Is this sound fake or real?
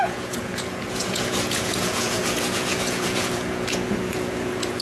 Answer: fake